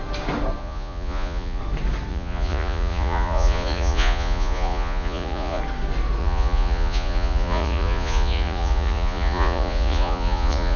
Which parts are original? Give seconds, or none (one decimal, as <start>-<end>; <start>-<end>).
0.0-0.6; 1.6-2.1; 5.6-6.2

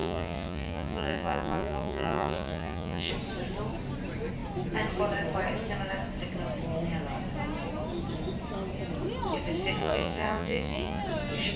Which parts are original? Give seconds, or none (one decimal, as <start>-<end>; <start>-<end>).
3.1-9.8; 11.0-11.6

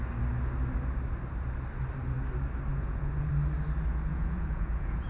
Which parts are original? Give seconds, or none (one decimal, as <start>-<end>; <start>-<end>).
0.0-2.7; 3.3-4.1

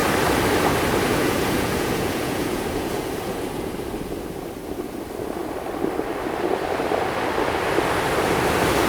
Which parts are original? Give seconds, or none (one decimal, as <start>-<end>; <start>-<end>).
0.0-1.1; 3.7-8.9

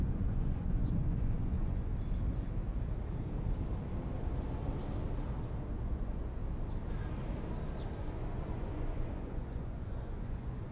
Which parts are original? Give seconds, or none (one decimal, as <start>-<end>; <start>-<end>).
1.9-5.7; 6.4-8.0

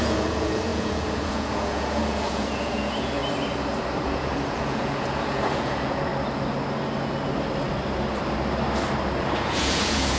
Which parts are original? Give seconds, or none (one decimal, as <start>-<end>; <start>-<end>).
3.2-4.0; 6.1-9.4